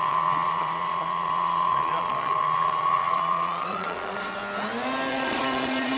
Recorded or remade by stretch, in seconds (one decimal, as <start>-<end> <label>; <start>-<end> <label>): 0.0-4.4 remade; 4.4-5.1 recorded; 5.1-6.0 remade